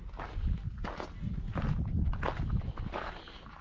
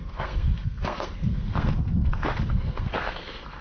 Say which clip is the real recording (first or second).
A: first